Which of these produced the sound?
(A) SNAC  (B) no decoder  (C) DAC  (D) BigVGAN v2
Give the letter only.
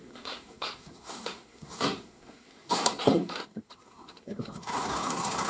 A